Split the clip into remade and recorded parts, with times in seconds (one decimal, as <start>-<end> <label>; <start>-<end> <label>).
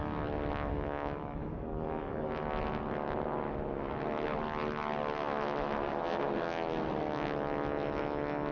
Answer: 0.0-0.7 recorded; 0.7-2.3 remade; 2.3-8.5 recorded